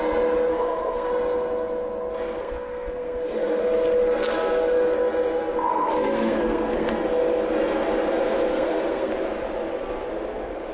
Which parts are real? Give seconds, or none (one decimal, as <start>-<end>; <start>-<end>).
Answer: 0.0-0.5; 1.1-2.4; 3.6-5.7; 6.9-8.5; 9.1-10.7